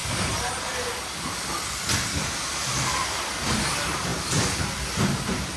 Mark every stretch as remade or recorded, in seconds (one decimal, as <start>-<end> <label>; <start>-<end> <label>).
0.0-5.6 recorded

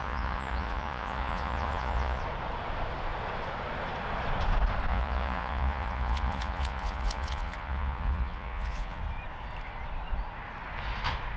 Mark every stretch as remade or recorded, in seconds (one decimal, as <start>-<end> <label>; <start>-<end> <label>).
0.0-2.2 remade; 2.2-4.9 recorded; 4.9-9.0 remade; 9.0-11.4 recorded